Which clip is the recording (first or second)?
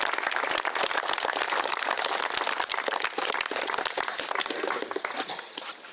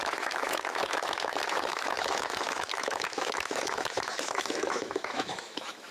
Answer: first